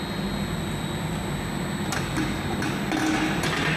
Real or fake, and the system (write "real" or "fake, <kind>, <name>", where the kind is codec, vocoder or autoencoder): real